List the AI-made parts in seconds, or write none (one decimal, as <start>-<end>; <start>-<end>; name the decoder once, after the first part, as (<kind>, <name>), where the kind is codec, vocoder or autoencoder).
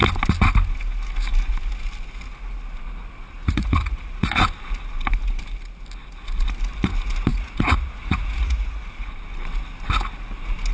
3.4-4.4 (vocoder, Vocos); 7.3-9.1